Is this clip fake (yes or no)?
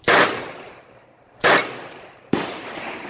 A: yes